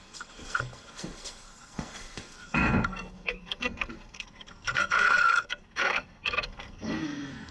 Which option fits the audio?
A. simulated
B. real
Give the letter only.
A